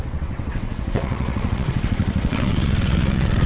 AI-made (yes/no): yes